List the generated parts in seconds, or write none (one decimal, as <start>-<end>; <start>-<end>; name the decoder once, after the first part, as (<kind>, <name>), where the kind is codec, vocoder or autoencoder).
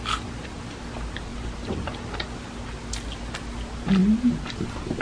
none